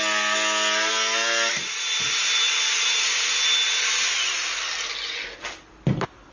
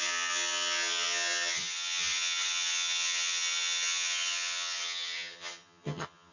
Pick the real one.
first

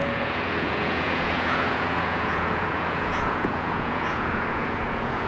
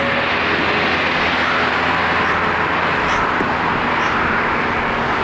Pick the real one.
second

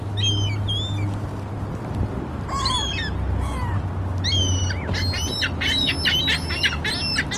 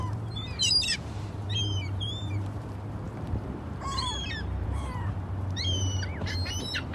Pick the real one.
first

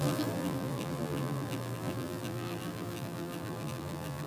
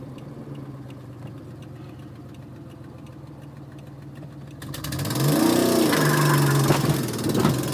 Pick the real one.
second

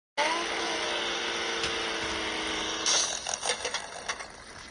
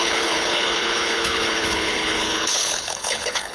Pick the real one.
first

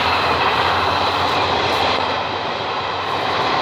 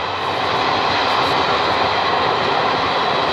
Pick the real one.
second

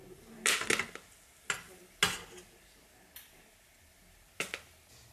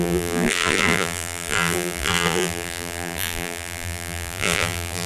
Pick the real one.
first